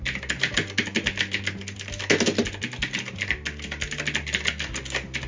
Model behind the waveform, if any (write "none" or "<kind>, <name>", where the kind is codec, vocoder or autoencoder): none